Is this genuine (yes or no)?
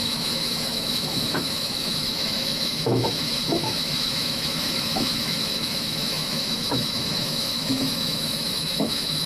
no